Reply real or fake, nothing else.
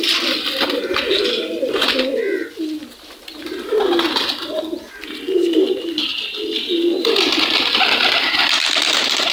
real